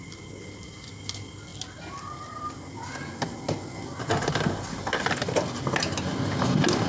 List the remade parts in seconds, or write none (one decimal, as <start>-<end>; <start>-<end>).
none